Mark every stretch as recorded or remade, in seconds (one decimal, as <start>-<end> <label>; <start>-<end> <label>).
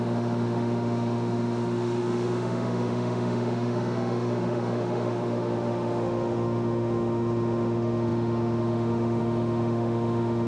0.0-10.5 remade